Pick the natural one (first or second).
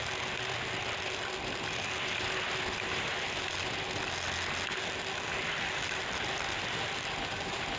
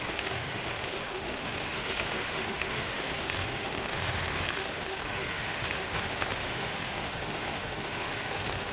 first